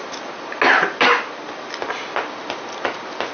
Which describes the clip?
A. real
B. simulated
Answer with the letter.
A